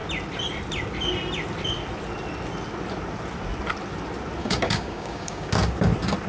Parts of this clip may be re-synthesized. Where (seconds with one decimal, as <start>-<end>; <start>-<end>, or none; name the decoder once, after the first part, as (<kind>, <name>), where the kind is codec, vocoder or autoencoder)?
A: 4.4-5.5 (codec, DAC)